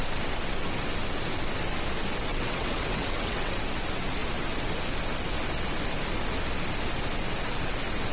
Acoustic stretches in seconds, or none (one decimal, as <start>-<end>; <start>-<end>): 0.0-2.3; 3.5-8.1